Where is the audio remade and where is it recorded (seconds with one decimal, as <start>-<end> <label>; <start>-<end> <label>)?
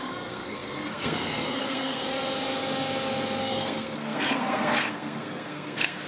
0.0-2.1 remade; 2.1-3.4 recorded; 3.4-6.1 remade